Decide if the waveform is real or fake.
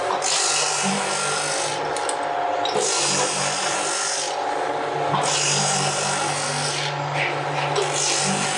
real